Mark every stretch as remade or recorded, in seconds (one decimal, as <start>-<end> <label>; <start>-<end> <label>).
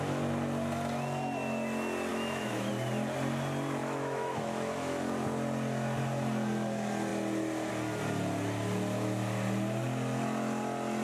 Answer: 0.0-2.1 recorded; 2.1-2.7 remade; 2.7-3.8 recorded; 3.8-5.0 remade; 5.0-11.0 recorded